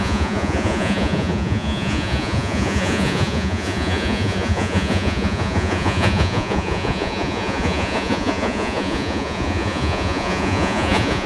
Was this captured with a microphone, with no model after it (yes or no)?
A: no